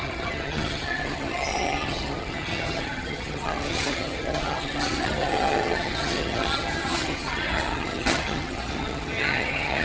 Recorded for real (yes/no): no